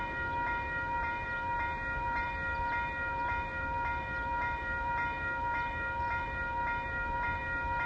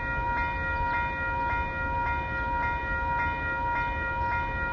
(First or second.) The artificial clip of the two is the first